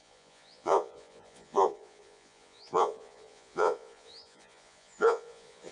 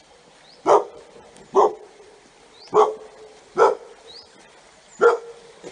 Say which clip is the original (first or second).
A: second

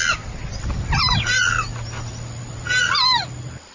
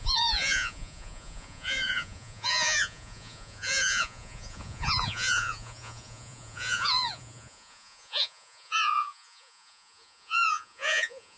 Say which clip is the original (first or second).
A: first